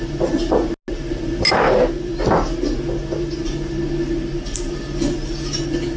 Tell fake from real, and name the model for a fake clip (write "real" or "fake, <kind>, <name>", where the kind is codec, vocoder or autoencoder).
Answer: real